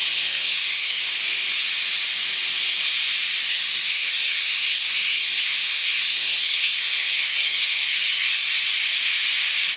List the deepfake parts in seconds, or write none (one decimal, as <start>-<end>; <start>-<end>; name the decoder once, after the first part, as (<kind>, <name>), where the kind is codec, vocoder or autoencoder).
0.0-1.0 (codec, SNAC); 3.5-8.5